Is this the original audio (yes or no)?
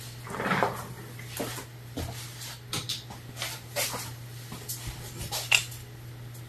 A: yes